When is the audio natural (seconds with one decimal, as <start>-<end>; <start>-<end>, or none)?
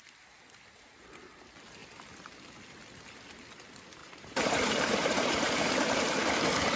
0.0-4.0; 5.4-6.8